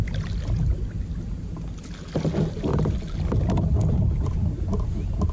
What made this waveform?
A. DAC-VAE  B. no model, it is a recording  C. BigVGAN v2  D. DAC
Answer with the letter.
B